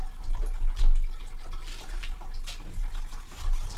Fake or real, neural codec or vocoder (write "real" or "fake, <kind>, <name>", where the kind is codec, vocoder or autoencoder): real